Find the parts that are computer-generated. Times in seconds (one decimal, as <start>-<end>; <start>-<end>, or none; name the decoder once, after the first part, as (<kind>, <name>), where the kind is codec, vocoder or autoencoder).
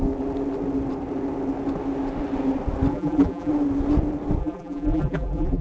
2.9-3.5 (vocoder, BigVGAN v2); 4.4-5.6